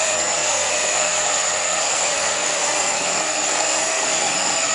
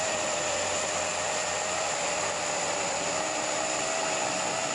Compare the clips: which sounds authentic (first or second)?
second